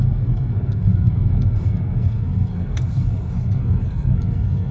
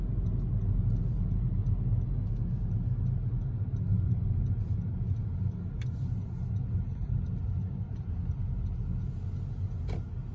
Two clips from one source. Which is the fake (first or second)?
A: first